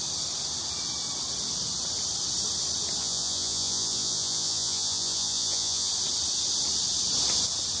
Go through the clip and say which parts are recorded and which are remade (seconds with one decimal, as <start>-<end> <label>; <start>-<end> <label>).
0.0-3.0 recorded; 3.0-5.9 remade; 5.9-7.8 recorded